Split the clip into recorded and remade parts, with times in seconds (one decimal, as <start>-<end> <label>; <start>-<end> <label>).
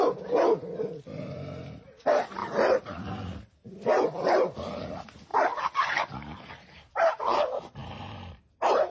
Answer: 0.0-2.4 recorded; 2.4-3.2 remade; 3.2-7.8 recorded; 7.8-8.3 remade; 8.3-8.9 recorded